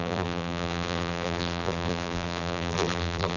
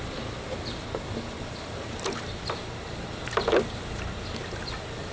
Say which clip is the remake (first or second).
first